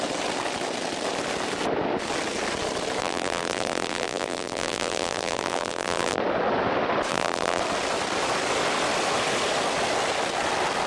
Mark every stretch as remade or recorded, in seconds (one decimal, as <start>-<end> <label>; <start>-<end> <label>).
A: 0.0-3.0 recorded; 3.0-6.2 remade; 6.2-7.1 recorded; 7.1-7.6 remade; 7.6-10.9 recorded